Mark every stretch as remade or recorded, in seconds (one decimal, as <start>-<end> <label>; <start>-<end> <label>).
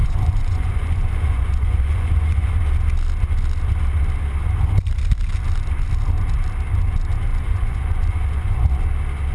0.0-2.5 remade; 2.5-7.3 recorded; 7.3-8.7 remade; 8.7-9.3 recorded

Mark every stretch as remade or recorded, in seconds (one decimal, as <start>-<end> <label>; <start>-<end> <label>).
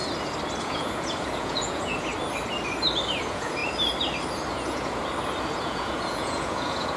0.0-0.6 recorded; 0.6-2.1 remade; 2.1-3.2 recorded; 3.2-3.6 remade; 3.6-4.5 recorded; 4.5-5.0 remade; 5.0-5.6 recorded; 5.6-7.0 remade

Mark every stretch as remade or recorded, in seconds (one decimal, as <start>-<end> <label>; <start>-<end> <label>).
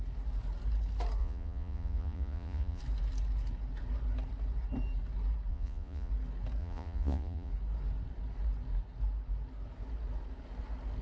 0.0-1.2 recorded; 1.2-2.8 remade; 2.8-5.5 recorded; 5.5-6.1 remade; 6.1-6.6 recorded; 6.6-7.5 remade; 7.5-11.0 recorded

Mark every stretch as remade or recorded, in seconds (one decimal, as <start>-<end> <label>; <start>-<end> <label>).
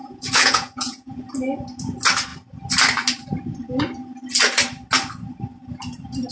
0.0-1.3 remade; 1.3-6.3 recorded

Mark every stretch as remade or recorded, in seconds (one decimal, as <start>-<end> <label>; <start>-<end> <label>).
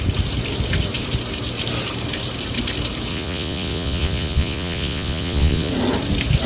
0.0-3.1 recorded; 3.1-5.7 remade; 5.7-6.5 recorded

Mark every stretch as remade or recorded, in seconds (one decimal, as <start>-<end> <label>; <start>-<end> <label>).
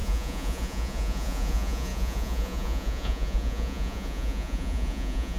0.0-5.4 remade